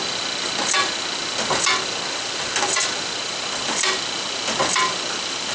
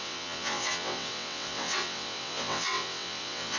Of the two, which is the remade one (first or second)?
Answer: second